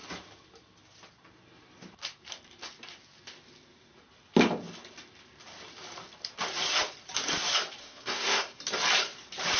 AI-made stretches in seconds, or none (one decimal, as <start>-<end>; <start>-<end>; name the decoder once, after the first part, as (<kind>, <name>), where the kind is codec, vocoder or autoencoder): 7.8-8.6 (codec, SNAC)